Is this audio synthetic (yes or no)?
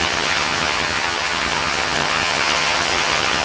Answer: yes